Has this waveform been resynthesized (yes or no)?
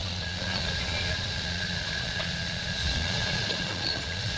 yes